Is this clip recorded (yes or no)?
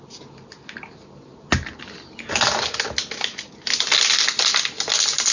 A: yes